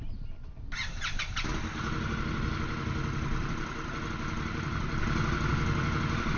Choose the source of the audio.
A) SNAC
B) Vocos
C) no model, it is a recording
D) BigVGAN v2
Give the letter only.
C